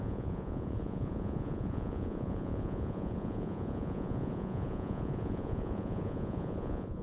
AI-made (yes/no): yes